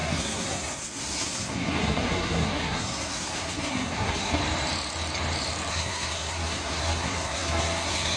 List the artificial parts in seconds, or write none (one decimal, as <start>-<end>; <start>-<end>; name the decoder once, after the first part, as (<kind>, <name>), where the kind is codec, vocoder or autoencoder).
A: 0.0-4.4 (codec, SNAC); 5.7-8.2